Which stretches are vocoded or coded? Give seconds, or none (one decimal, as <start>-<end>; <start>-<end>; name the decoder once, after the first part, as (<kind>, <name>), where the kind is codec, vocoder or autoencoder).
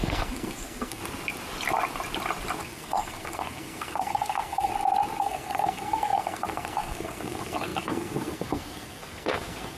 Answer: 0.0-1.0 (codec, SNAC); 2.6-4.7; 5.2-9.8